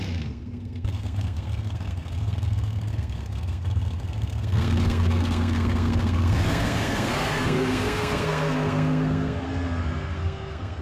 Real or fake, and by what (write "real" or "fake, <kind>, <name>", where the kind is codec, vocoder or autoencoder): fake, codec, SNAC